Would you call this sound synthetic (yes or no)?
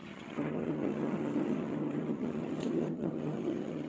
yes